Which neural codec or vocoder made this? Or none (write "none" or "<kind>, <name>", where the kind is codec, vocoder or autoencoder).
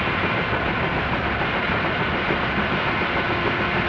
none